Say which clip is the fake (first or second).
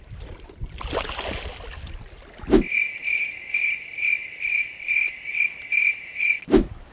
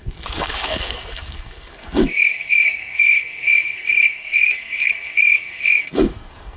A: second